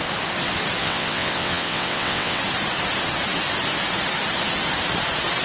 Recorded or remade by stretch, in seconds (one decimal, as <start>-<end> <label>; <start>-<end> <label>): 0.0-0.8 recorded; 0.8-2.4 remade; 2.4-5.4 recorded